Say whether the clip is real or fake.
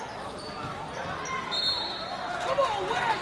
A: real